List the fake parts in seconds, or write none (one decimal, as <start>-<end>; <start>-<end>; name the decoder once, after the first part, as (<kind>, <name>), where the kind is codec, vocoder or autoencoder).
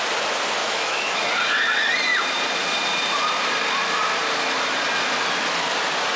0.6-1.2 (autoencoder, DAC-VAE)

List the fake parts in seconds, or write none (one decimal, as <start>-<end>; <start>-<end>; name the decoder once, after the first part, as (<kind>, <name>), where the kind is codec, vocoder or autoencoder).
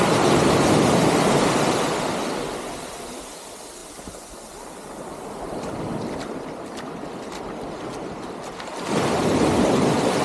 none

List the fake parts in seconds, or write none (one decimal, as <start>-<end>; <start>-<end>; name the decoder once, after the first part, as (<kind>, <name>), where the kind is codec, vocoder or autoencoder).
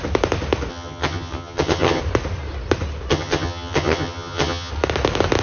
0.7-2.0 (vocoder, HiFi-GAN); 3.1-4.7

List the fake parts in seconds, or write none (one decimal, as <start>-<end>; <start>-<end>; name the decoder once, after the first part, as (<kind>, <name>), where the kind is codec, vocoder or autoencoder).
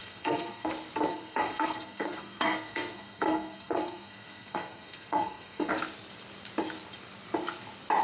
0.0-0.7 (codec, SNAC); 1.1-5.7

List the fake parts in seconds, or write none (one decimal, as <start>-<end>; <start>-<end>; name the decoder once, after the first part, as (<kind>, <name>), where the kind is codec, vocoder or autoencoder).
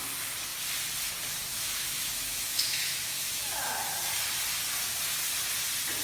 1.5-3.8 (autoencoder, DAC-VAE)